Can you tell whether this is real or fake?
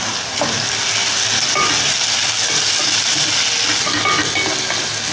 real